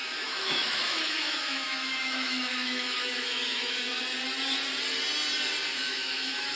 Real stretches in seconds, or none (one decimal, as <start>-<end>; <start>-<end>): 4.0-5.7